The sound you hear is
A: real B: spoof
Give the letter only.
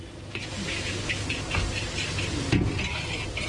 A